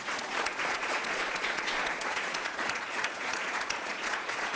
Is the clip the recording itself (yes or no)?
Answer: no